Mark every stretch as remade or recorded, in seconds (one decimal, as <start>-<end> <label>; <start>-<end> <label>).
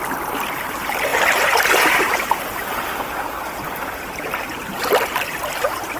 0.0-6.0 recorded